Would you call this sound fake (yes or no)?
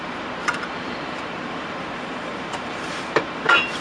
yes